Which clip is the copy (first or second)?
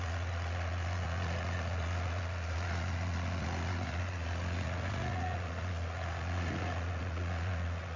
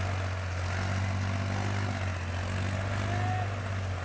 first